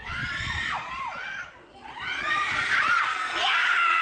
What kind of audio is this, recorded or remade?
remade